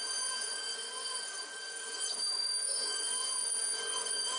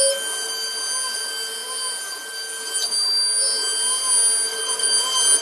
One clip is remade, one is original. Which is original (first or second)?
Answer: second